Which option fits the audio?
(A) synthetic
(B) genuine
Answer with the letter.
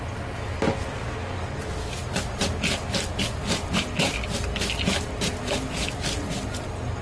B